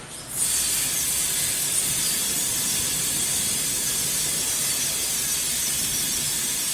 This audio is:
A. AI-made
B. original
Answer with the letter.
B